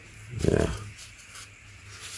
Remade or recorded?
recorded